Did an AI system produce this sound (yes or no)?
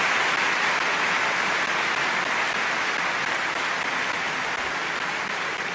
no